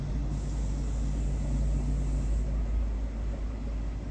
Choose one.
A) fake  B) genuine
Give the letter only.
B